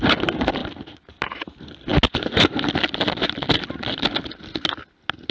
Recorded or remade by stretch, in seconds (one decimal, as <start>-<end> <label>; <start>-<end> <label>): 0.0-5.3 recorded